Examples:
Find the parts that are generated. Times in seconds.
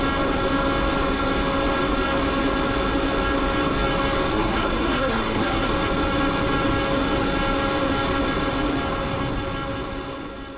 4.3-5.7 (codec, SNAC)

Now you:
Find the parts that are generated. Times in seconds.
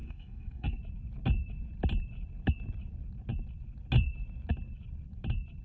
0.0-0.8 (codec, SNAC)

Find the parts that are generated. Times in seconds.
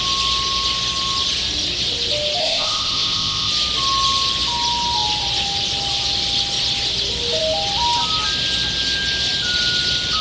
2.4-3.5 (codec, ZipCodec)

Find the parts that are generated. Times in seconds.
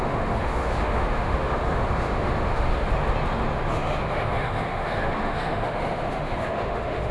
0.0-2.9 (autoencoder, DAC-VAE); 3.7-7.1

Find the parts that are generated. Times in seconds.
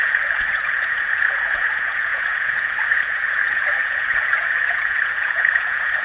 0.0-6.0 (vocoder, Vocos)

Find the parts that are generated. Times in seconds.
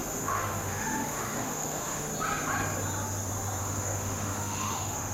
0.0-2.1 (autoencoder, DAC-VAE); 3.6-5.1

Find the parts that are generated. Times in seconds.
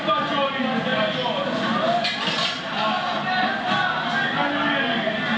0.9-4.1 (vocoder, BigVGAN v2)